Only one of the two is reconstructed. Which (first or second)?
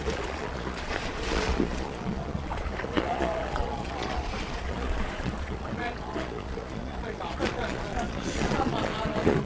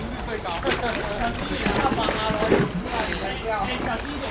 first